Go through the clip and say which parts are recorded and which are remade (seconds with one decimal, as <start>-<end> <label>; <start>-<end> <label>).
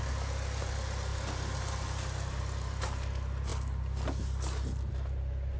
0.0-5.6 recorded